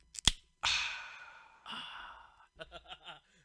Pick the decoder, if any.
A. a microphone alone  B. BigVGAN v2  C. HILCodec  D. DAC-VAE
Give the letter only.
A